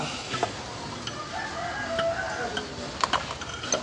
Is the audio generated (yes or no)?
no